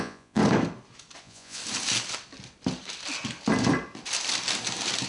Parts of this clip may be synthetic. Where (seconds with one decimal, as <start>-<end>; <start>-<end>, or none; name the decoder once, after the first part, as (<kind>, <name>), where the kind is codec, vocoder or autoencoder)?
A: 0.0-0.4 (vocoder, Vocos); 1.2-1.6

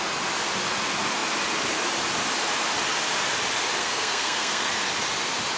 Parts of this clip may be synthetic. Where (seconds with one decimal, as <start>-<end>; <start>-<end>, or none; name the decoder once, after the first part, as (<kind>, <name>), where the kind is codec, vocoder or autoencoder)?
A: 3.8-4.7 (codec, SNAC)

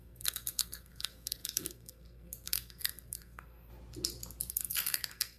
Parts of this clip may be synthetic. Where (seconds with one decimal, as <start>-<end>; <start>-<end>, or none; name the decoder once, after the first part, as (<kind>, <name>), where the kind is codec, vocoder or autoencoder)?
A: 0.0-3.7 (codec, SNAC); 4.5-5.4

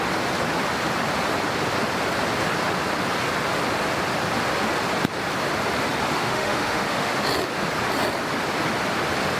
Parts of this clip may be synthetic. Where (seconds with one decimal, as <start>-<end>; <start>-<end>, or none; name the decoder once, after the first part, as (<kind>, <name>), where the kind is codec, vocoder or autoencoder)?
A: 6.1-7.2 (autoencoder, DAC-VAE)

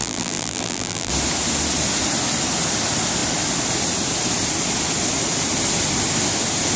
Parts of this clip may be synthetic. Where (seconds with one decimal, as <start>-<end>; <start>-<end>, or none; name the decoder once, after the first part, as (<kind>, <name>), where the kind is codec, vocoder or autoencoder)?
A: 0.0-1.1 (vocoder, BigVGAN v2)

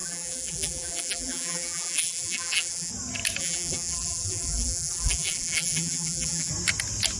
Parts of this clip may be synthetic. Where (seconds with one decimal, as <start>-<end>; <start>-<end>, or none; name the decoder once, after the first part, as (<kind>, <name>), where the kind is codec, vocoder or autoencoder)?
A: 0.0-2.9 (vocoder, BigVGAN v2); 3.4-6.5